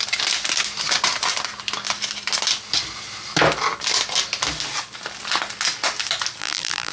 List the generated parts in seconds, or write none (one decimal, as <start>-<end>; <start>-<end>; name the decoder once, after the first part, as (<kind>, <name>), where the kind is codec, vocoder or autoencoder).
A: 6.4-6.9 (vocoder, BigVGAN v2)